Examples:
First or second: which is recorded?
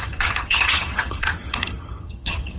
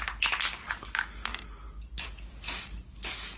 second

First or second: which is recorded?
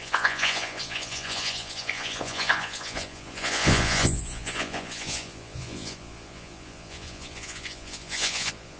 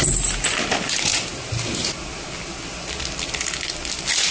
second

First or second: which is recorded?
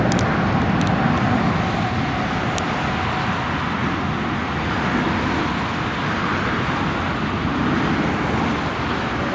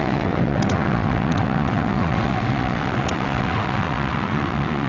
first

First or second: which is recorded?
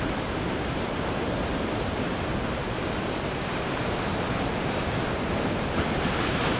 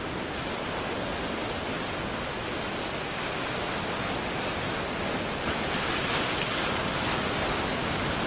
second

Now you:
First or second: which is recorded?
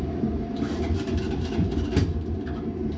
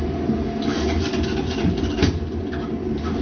second